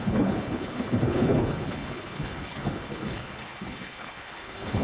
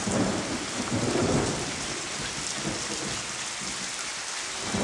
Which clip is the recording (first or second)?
second